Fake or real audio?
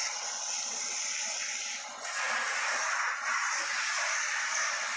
real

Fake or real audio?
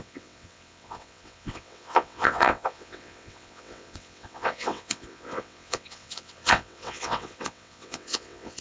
fake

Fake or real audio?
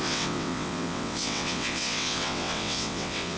fake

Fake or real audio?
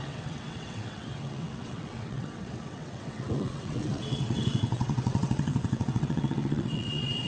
fake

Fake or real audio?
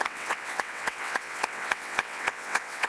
fake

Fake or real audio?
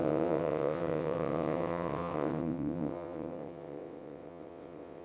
fake